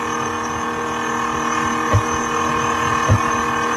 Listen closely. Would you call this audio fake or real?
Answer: real